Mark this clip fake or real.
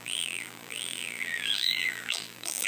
fake